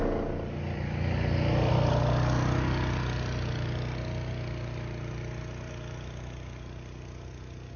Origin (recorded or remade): recorded